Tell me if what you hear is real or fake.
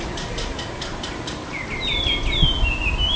real